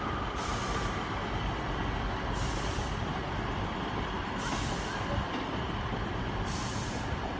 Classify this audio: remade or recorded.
remade